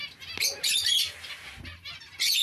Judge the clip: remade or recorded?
recorded